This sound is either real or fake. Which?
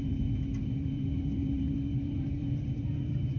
fake